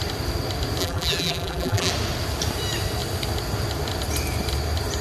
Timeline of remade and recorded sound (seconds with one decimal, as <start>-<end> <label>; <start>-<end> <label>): 0.0-0.8 recorded; 0.8-1.9 remade; 1.9-5.0 recorded